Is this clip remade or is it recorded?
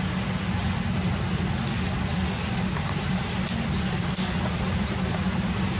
recorded